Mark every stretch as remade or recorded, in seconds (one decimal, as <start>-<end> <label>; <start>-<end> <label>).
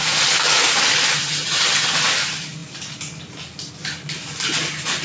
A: 0.0-1.2 recorded; 1.2-1.9 remade; 1.9-5.0 recorded